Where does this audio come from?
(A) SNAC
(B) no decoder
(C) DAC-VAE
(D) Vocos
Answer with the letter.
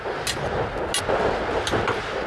B